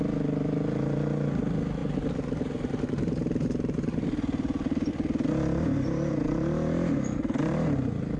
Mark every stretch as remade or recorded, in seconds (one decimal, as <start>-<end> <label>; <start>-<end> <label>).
0.0-1.8 recorded; 1.8-4.9 remade; 4.9-8.2 recorded